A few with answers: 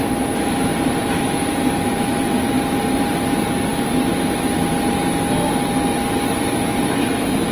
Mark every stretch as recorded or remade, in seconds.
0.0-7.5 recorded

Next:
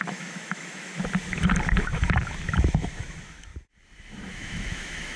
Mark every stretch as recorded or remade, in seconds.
0.0-0.9 remade; 0.9-2.3 recorded; 2.3-3.5 remade; 3.5-4.3 recorded; 4.3-5.2 remade

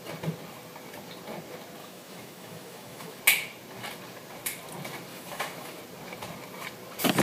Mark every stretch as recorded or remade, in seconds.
0.0-1.8 recorded; 1.8-3.2 remade; 3.2-5.1 recorded; 5.1-5.8 remade; 5.8-7.2 recorded

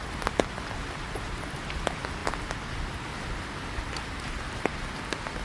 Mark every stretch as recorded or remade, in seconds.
0.0-5.4 recorded

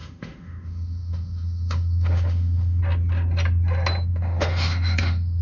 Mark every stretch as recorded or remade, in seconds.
0.0-2.8 remade; 2.8-4.1 recorded; 4.1-5.4 remade

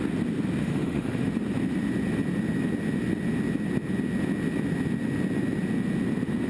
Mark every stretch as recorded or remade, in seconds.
0.0-0.6 recorded; 0.6-1.3 remade; 1.3-6.5 recorded